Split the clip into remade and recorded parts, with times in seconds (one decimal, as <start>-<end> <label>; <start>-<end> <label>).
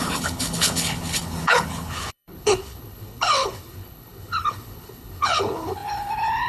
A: 0.0-6.5 remade